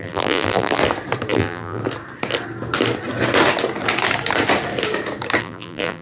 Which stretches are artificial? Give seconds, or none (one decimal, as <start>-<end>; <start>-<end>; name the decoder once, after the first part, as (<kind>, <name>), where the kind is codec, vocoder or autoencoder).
0.0-0.8 (vocoder, BigVGAN v2); 1.3-1.8; 5.4-6.0

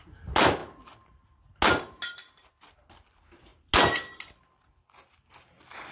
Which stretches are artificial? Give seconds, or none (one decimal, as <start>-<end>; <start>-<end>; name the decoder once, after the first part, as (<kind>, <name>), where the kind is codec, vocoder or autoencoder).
none

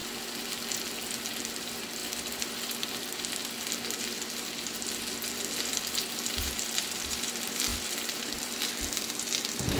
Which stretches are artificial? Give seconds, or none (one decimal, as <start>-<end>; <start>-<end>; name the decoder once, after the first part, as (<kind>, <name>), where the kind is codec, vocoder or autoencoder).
1.4-3.4 (vocoder, BigVGAN v2); 6.4-9.8